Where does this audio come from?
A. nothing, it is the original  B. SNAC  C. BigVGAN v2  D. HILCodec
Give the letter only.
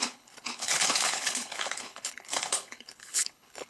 D